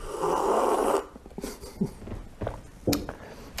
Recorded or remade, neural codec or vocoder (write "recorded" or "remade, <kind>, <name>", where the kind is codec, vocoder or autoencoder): recorded